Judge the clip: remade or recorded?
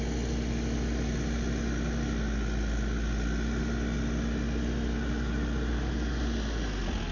recorded